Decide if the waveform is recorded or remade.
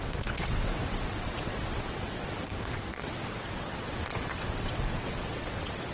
remade